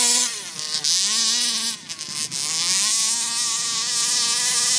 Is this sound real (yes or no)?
yes